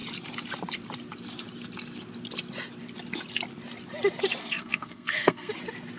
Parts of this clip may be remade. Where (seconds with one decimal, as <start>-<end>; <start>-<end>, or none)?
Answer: 4.4-5.5